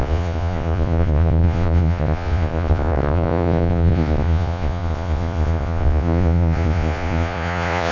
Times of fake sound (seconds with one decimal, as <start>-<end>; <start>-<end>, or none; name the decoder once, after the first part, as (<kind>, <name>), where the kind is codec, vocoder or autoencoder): 0.0-7.9 (vocoder, Vocos)